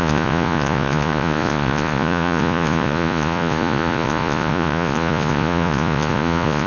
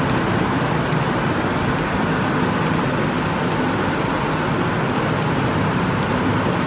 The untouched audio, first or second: second